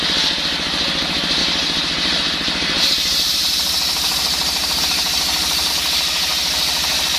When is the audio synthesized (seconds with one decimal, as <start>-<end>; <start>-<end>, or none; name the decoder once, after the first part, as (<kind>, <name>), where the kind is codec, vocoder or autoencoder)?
1.4-5.7 (vocoder, BigVGAN v2)